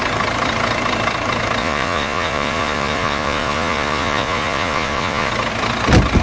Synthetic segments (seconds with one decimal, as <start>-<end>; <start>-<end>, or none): 1.6-5.3